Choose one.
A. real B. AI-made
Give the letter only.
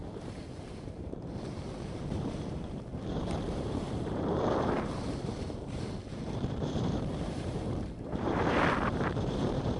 B